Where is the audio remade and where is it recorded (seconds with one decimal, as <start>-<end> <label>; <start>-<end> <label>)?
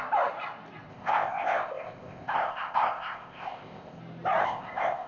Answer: 0.0-0.9 recorded; 0.9-4.0 remade; 4.0-4.4 recorded; 4.4-5.1 remade